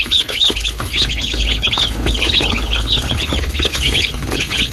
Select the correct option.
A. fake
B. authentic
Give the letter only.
A